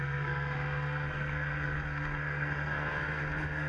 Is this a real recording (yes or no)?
no